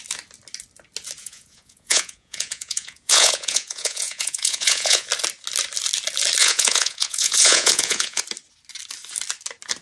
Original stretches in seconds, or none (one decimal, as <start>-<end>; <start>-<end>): 0.0-1.2; 5.1-6.4; 8.2-9.8